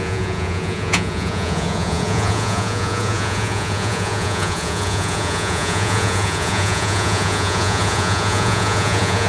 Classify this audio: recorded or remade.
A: remade